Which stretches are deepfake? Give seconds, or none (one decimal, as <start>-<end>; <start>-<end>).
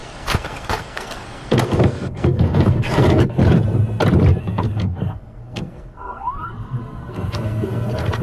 0.0-3.4; 4.4-8.2